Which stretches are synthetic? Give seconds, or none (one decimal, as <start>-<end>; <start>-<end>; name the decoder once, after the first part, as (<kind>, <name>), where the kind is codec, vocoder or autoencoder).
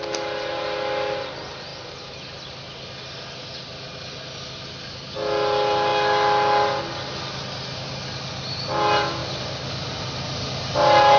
1.7-2.2 (vocoder, BigVGAN v2)